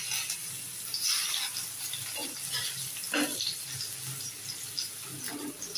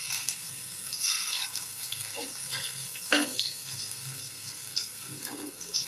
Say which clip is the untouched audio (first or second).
first